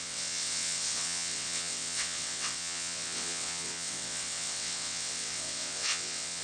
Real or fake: fake